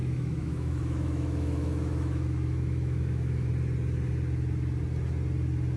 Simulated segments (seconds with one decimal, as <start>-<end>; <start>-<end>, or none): 0.0-3.5